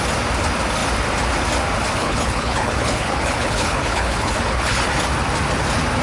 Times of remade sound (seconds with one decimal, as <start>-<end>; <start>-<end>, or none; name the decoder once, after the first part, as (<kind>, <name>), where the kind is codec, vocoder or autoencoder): 2.0-4.9 (codec, HILCodec)